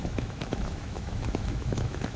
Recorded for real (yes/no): no